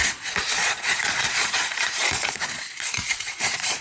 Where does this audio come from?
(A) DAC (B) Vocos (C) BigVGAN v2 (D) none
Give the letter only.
B